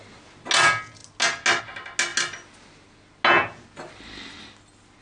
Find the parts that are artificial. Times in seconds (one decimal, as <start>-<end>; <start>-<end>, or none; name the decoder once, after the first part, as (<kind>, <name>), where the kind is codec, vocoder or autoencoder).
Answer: none